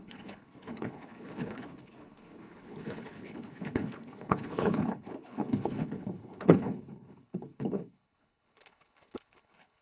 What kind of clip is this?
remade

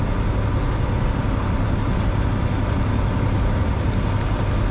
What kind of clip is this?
recorded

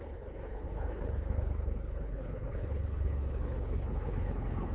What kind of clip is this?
remade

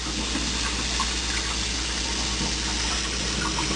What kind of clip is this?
recorded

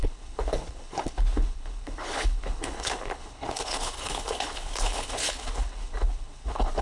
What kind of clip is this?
remade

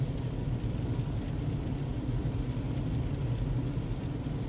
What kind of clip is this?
recorded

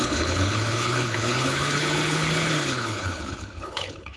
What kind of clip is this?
remade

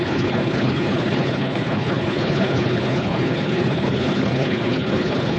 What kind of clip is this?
remade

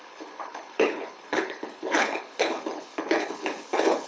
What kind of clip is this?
remade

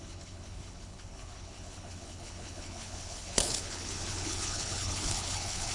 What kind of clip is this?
remade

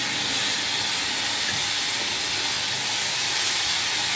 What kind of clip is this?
recorded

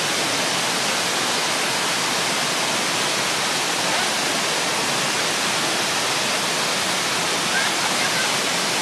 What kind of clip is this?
recorded